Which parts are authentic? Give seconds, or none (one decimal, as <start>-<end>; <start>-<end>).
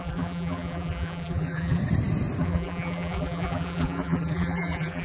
1.8-2.4